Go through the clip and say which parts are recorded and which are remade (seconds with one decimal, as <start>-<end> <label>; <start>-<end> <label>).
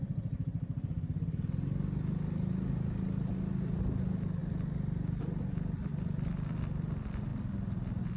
0.0-8.2 recorded